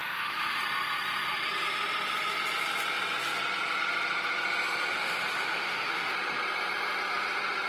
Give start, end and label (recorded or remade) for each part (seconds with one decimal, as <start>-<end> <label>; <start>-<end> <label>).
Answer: 0.0-0.6 remade; 0.6-4.9 recorded; 4.9-6.1 remade; 6.1-7.7 recorded